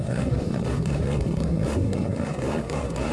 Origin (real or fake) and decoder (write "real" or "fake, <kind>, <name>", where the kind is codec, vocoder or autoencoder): fake, codec, SNAC